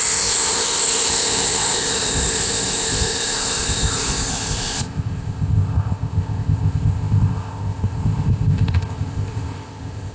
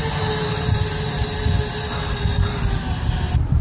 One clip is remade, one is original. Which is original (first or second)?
second